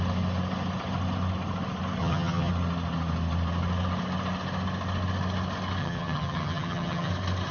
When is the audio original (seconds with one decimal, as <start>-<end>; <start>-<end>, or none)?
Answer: 0.0-2.0; 2.5-5.8; 7.1-7.5